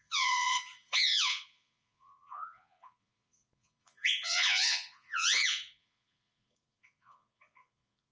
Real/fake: fake